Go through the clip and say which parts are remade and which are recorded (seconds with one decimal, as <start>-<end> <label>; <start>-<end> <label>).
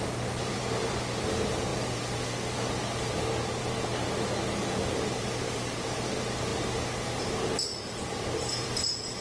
0.0-1.7 remade; 1.7-5.1 recorded; 5.1-6.5 remade; 6.5-7.2 recorded; 7.2-9.2 remade